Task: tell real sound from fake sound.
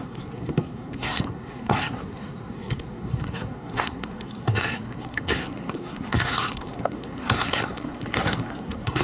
fake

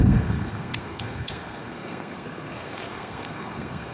fake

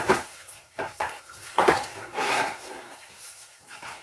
fake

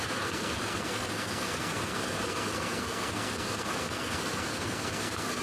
fake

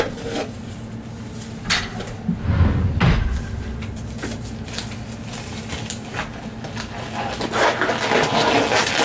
real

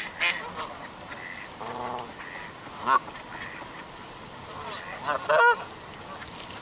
real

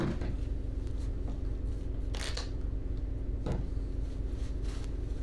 real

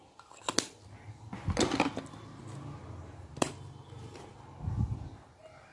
real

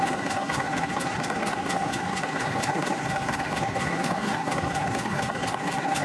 fake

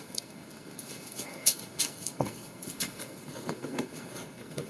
fake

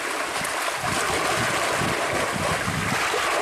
real